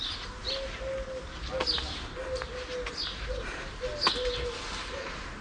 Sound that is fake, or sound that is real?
real